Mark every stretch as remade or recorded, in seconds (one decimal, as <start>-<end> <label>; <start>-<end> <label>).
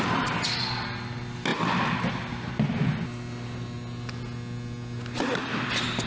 0.0-6.1 recorded